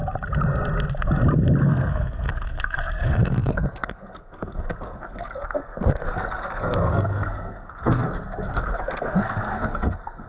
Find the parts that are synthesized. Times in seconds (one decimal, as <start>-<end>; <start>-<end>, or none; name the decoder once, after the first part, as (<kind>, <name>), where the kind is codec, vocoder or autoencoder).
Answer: 1.6-10.3 (codec, SNAC)